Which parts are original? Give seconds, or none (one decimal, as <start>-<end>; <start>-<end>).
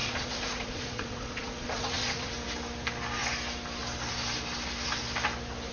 2.3-5.7